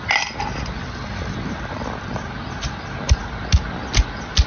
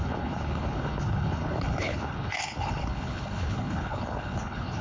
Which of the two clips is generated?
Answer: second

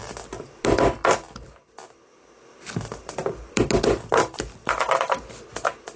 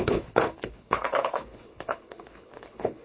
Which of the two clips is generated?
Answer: second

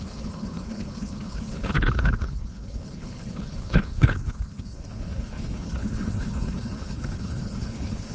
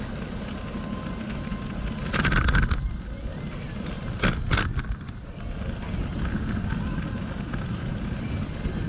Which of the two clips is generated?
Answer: first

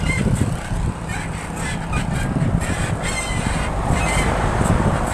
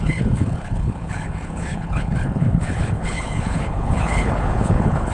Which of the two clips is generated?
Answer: second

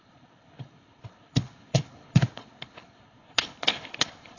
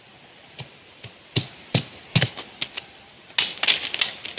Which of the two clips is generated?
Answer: first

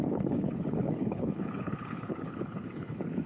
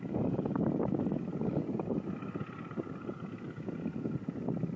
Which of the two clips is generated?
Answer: first